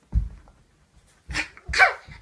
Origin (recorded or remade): recorded